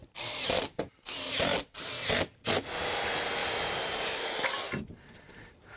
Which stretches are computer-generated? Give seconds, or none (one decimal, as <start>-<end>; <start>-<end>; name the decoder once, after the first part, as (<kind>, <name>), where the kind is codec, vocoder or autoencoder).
0.0-0.8 (vocoder, BigVGAN v2); 3.4-4.3

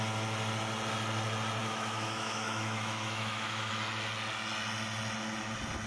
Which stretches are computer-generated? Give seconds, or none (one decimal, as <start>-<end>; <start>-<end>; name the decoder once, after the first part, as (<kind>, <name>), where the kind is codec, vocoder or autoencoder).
1.6-3.7 (autoencoder, DAC-VAE)

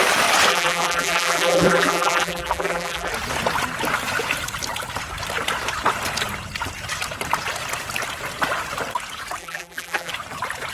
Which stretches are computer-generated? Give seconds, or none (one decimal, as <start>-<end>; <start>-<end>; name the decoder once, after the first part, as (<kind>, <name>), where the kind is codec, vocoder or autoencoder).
0.5-3.1 (vocoder, BigVGAN v2); 9.4-10.1

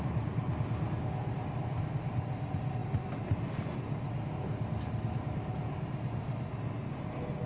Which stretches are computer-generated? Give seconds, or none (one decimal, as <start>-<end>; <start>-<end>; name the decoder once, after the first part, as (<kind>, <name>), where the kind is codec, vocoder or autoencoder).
none

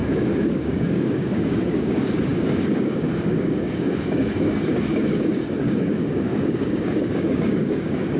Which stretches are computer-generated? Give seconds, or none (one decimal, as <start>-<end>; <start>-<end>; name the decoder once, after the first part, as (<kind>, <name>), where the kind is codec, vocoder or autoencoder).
0.0-8.2 (codec, DAC)

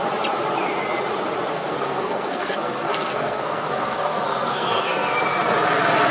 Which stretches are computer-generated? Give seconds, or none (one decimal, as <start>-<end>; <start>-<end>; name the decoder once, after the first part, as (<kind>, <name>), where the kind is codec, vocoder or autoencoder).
1.5-5.2 (codec, SNAC)

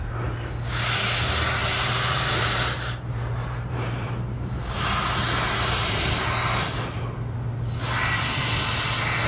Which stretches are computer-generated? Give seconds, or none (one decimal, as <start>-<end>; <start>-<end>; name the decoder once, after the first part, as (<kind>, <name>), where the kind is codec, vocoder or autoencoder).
1.6-6.1 (vocoder, BigVGAN v2)